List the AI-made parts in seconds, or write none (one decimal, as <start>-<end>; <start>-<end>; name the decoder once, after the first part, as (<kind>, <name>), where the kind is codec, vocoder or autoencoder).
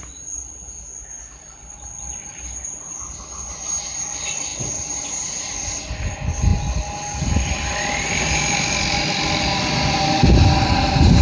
none